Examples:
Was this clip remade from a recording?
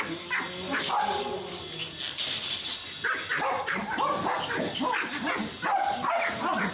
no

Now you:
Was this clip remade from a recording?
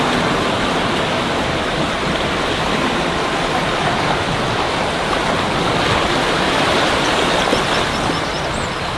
no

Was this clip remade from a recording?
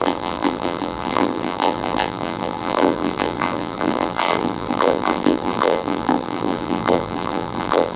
yes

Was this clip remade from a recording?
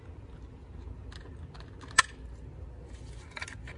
no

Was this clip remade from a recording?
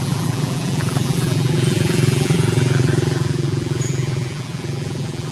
yes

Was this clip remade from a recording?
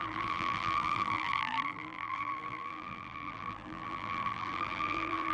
yes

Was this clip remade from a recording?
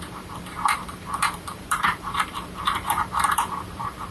yes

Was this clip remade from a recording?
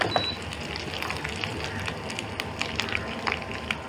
yes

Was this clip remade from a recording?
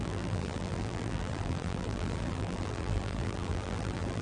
yes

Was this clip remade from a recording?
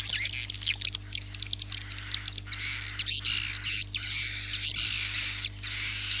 no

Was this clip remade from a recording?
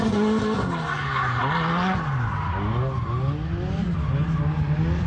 no